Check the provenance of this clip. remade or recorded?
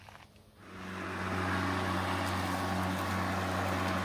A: recorded